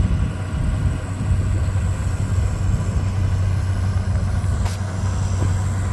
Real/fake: real